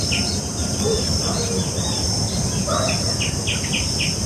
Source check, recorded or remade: recorded